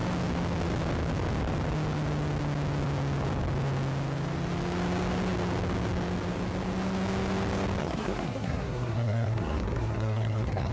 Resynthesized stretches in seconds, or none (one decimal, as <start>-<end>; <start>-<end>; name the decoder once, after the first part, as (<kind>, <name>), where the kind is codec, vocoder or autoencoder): 7.8-10.7 (codec, SNAC)